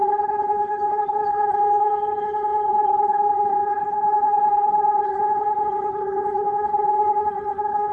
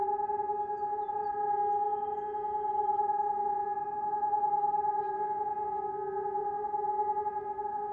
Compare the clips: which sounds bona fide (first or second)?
second